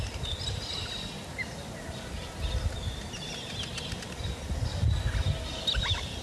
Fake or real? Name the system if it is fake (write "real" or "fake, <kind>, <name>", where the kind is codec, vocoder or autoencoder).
real